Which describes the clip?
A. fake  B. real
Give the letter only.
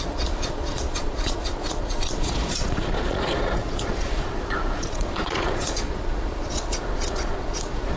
A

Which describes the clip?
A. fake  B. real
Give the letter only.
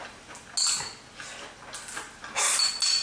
B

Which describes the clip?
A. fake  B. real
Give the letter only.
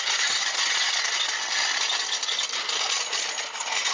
B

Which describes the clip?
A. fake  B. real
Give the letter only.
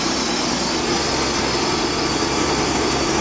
B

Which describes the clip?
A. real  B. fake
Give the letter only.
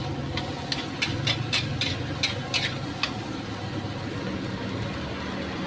A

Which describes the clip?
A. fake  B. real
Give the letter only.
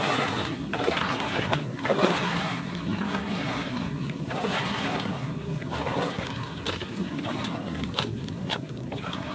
A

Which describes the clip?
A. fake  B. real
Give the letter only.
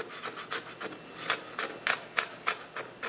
B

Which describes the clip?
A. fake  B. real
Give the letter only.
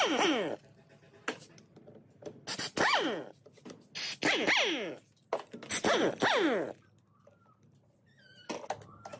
B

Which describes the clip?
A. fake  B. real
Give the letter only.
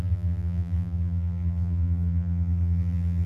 A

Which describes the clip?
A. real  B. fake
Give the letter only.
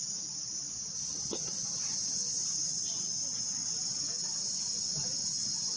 A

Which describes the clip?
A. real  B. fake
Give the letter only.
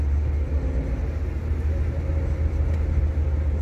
A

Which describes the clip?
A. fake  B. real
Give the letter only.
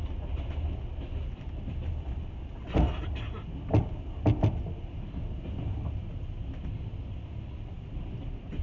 B